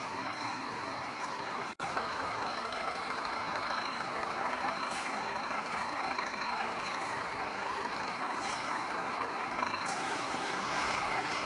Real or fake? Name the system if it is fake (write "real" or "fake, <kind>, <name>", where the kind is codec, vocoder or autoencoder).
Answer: fake, codec, SNAC